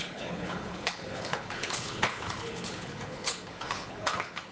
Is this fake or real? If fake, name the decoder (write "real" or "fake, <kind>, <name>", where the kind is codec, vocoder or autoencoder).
fake, codec, HILCodec